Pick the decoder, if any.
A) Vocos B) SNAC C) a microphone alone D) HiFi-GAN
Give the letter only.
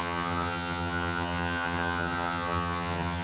D